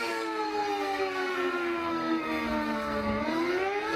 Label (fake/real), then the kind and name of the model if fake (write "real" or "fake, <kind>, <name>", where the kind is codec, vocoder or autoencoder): fake, codec, SNAC